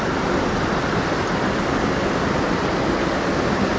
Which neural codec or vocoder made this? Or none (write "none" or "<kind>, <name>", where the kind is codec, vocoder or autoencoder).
none